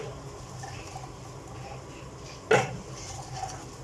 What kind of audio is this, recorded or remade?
recorded